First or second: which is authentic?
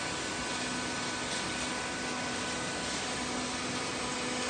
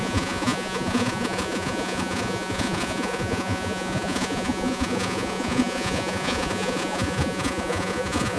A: first